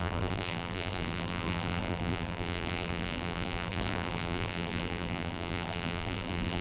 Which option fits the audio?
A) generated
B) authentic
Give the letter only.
A